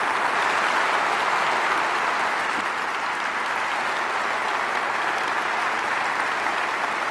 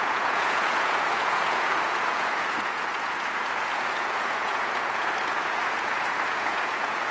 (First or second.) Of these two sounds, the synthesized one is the second